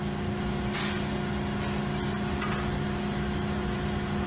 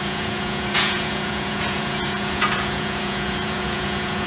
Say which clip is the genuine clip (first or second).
first